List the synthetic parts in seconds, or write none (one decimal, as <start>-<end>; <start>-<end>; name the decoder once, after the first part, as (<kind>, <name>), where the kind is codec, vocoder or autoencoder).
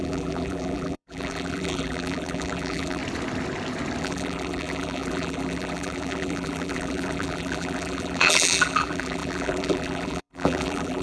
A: 0.0-3.0 (vocoder, BigVGAN v2); 4.0-11.0